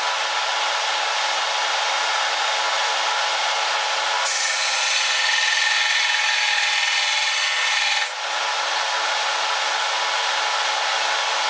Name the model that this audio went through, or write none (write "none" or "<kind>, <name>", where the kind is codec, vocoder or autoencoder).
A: none